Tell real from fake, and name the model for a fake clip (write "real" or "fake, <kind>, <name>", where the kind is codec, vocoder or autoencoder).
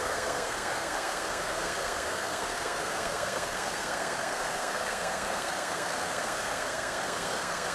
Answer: fake, codec, SNAC